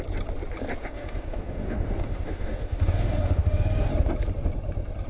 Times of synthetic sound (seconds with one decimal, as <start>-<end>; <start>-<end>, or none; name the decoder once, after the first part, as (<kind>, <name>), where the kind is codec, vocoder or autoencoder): 0.8-3.9 (autoencoder, DAC-VAE)